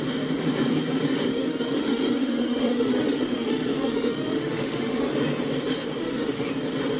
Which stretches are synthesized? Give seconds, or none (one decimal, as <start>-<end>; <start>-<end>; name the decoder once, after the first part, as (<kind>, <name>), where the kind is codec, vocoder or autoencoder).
1.3-5.1 (autoencoder, DAC-VAE); 6.0-6.5